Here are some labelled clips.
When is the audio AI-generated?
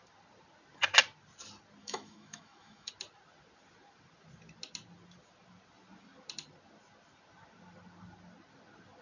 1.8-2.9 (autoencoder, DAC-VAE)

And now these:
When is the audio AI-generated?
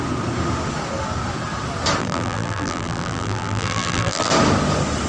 2.0-4.3 (vocoder, BigVGAN v2)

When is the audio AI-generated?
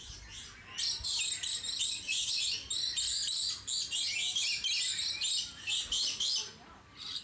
1.8-2.4 (vocoder, WaveNeXt)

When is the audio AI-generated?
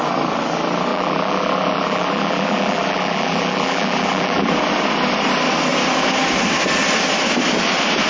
0.9-4.5 (vocoder, BigVGAN v2)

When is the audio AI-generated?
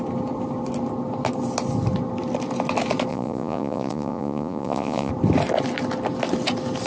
3.1-5.1 (vocoder, Vocos)